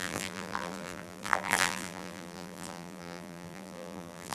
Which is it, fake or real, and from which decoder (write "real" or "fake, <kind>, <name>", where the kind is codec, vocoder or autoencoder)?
fake, vocoder, BigVGAN v2